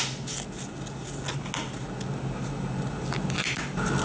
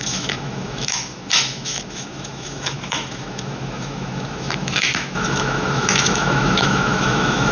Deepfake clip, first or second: second